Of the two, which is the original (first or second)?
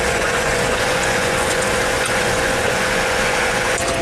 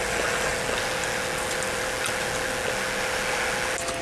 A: second